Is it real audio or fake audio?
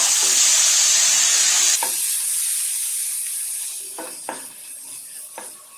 real